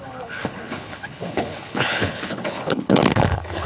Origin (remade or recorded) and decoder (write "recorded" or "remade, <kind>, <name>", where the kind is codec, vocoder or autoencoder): remade, codec, HILCodec